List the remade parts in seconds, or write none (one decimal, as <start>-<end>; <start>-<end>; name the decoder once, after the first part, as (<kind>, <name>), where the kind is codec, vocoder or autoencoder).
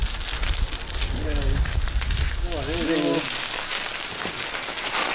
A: none